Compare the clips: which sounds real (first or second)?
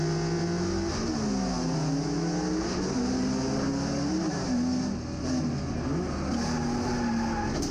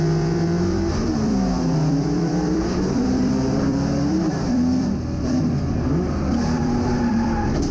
first